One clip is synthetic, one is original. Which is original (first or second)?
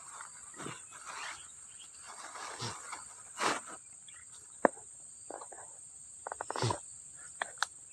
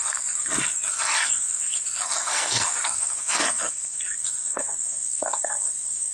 first